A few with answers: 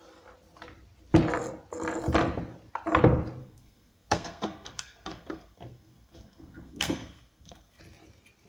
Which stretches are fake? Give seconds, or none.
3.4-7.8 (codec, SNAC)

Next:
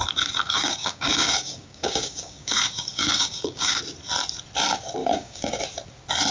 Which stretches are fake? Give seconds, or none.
0.4-3.8 (codec, DAC); 5.0-5.6

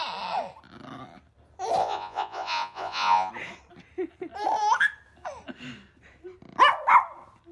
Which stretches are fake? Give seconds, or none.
1.8-3.3 (vocoder, Vocos)

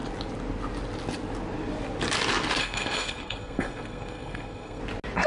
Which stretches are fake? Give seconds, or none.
2.6-4.8 (codec, SNAC)

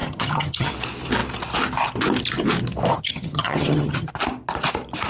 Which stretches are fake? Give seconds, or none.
0.0-0.7 (vocoder, HiFi-GAN); 2.9-4.1